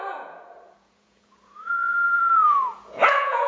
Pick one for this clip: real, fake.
fake